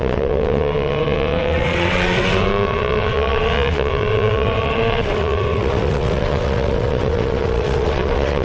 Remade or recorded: remade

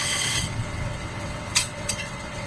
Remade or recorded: remade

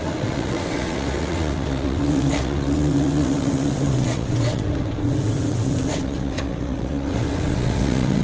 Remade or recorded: remade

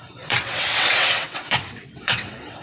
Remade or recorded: remade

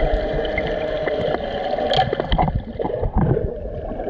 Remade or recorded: recorded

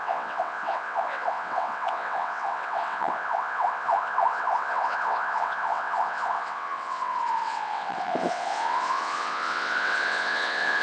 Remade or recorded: remade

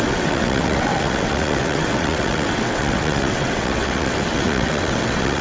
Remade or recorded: remade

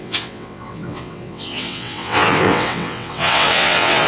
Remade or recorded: remade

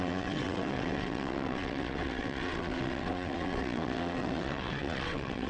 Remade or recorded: remade